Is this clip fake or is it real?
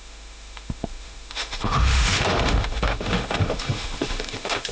fake